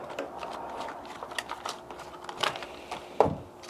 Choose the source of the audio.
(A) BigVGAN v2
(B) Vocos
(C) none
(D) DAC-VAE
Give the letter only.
C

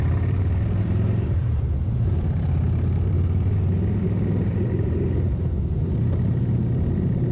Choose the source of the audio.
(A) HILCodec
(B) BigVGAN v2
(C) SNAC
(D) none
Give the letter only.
B